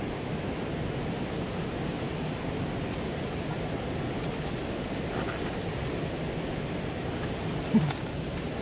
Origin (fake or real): real